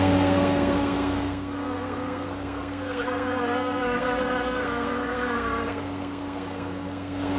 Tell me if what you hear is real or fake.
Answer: fake